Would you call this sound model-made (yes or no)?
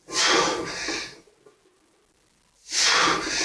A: no